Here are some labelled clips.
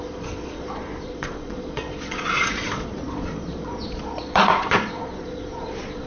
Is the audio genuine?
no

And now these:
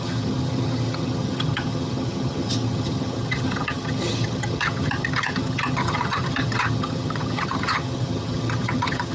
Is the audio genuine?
no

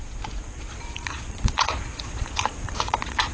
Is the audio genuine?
no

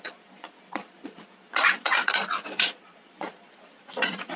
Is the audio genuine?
no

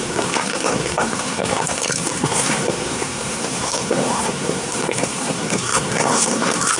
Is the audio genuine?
no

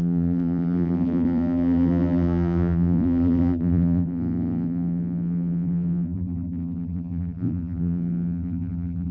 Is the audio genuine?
no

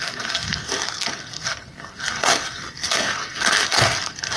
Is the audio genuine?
no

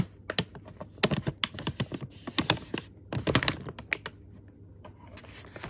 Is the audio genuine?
yes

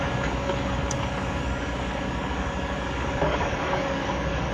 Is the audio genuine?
no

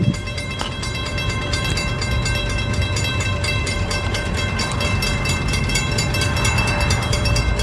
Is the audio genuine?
no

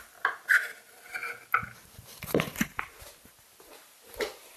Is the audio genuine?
yes